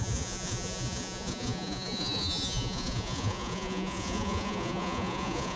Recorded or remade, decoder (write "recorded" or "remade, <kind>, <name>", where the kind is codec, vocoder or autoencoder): remade, vocoder, Vocos